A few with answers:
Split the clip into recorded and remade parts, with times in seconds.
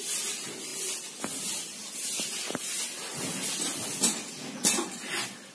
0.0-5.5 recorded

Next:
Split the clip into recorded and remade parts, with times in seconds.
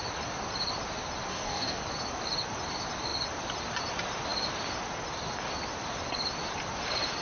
0.0-1.3 recorded; 1.3-1.8 remade; 1.8-7.2 recorded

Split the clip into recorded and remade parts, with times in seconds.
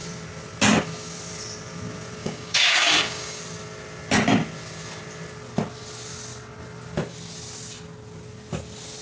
0.0-2.2 recorded; 2.2-3.4 remade; 3.4-9.0 recorded